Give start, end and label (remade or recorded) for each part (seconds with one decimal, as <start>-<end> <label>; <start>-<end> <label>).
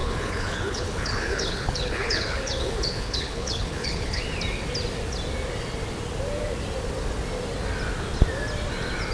0.0-4.2 remade; 4.2-9.1 recorded